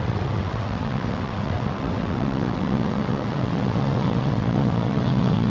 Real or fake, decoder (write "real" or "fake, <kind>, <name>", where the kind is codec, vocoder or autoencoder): fake, vocoder, WaveNeXt